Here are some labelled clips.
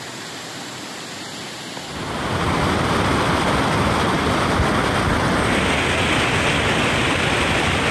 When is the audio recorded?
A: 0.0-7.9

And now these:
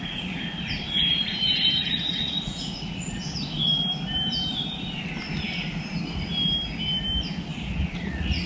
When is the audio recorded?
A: 0.4-1.1; 3.2-7.8

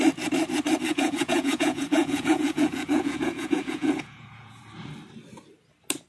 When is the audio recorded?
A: 0.0-0.9; 4.6-6.1

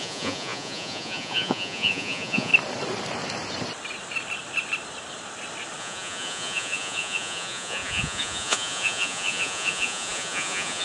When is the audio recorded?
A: 2.5-5.8

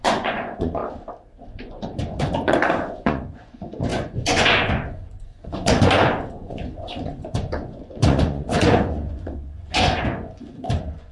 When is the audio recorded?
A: 0.8-1.4

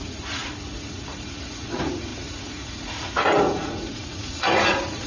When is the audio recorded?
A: none

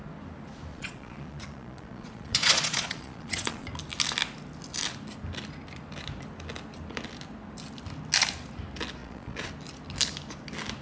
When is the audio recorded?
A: 0.0-0.7; 3.7-9.0; 9.5-10.8

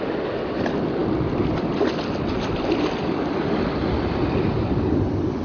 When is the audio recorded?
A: 0.0-5.4